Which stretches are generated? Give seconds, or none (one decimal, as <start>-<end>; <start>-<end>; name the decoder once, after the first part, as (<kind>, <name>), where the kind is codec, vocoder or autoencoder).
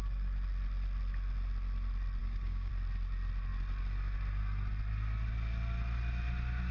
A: 2.2-2.7 (codec, DAC)